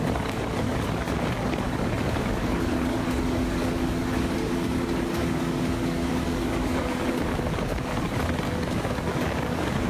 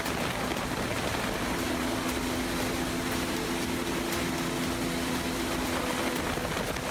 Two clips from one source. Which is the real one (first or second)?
second